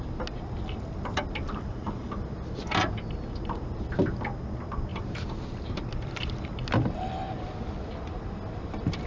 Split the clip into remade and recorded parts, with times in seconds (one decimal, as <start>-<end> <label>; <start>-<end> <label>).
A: 0.0-4.9 recorded; 4.9-5.4 remade; 5.4-9.1 recorded